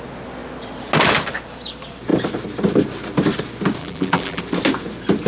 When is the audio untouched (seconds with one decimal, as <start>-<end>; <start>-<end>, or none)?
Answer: 0.0-3.8; 4.4-5.3